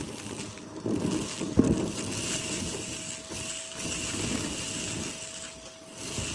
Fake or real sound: real